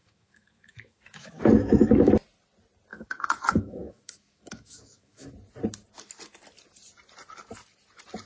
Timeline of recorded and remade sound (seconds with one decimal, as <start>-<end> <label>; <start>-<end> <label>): 0.0-2.1 remade; 2.1-2.9 recorded; 2.9-5.3 remade; 5.3-8.3 recorded